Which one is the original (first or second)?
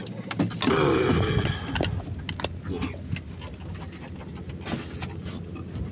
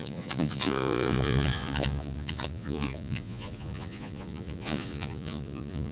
first